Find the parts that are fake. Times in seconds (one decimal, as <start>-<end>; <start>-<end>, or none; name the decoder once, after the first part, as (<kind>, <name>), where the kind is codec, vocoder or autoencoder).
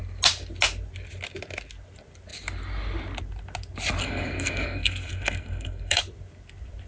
4.0-6.0 (codec, SNAC)